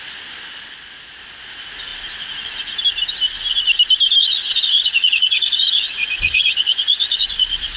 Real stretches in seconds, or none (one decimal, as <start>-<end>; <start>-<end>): 0.0-4.2

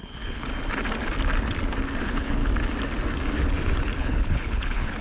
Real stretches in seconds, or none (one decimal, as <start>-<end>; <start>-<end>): 0.5-2.0; 2.4-4.0

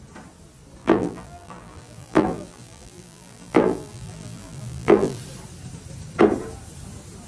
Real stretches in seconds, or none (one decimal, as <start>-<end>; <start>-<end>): 0.0-0.8; 5.2-7.3

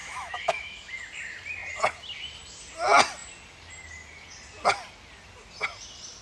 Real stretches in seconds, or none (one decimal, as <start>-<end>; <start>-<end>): 1.0-6.2

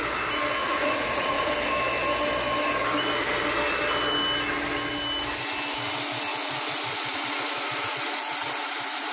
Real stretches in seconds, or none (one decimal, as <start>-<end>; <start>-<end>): 0.0-0.6; 1.5-6.3

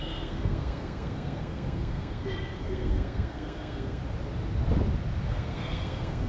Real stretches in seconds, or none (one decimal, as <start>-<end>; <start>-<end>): 4.0-5.3

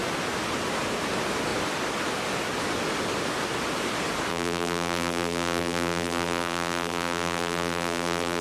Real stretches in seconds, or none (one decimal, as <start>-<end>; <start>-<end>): 0.0-4.3